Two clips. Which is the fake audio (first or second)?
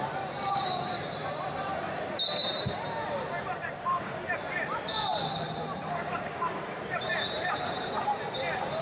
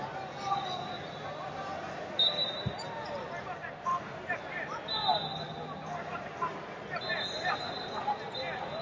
first